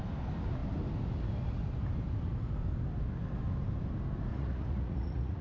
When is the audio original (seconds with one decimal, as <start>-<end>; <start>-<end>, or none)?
0.0-4.3